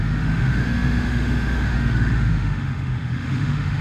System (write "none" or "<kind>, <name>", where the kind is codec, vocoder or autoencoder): autoencoder, DAC-VAE